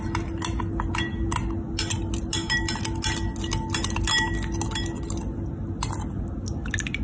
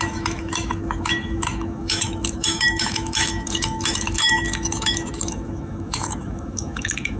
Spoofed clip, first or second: second